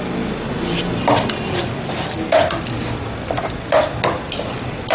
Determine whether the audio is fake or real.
real